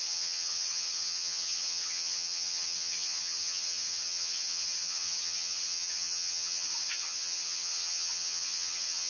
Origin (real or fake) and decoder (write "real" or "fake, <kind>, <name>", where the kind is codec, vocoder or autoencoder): fake, vocoder, HiFi-GAN